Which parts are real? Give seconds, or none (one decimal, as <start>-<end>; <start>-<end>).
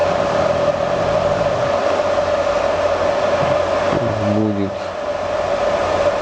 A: 0.0-6.2